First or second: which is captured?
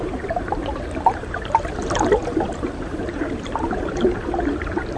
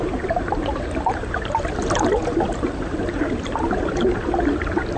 second